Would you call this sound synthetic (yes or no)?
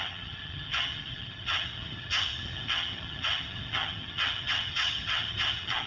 yes